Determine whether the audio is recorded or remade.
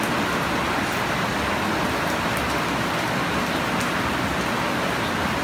recorded